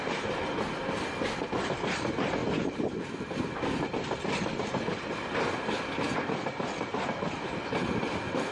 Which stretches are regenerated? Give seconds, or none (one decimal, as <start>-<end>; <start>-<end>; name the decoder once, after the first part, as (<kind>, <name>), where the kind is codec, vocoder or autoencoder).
2.4-5.8 (vocoder, BigVGAN v2)